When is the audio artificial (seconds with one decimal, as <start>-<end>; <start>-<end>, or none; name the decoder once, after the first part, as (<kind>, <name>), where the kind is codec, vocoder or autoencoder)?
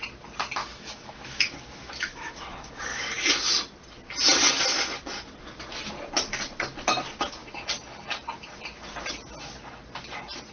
0.6-3.3 (autoencoder, DAC-VAE)